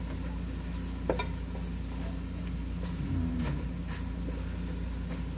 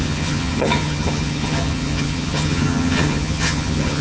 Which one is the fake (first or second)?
second